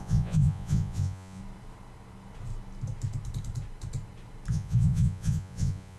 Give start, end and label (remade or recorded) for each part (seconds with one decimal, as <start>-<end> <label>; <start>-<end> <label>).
0.0-1.4 remade; 1.4-4.5 recorded; 4.5-6.0 remade